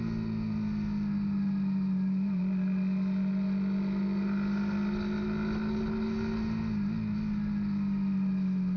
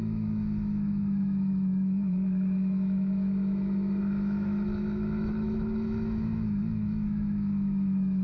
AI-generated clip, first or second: second